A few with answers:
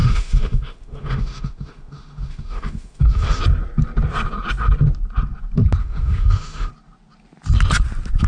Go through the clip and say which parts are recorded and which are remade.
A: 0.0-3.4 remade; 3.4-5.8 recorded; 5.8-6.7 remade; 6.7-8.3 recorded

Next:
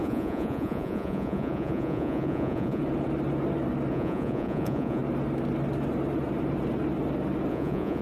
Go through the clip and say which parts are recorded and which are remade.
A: 0.0-2.8 remade; 2.8-3.9 recorded; 3.9-5.0 remade; 5.0-7.5 recorded; 7.5-8.0 remade

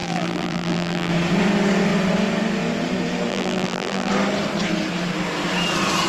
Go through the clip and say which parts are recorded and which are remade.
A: 0.0-1.1 remade; 1.1-3.3 recorded; 3.3-4.1 remade; 4.1-6.1 recorded